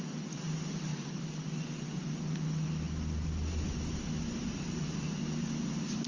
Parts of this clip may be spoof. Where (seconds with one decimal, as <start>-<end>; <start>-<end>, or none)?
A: 4.4-6.1